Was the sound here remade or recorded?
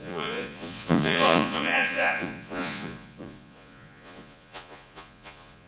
remade